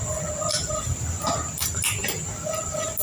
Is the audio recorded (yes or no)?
yes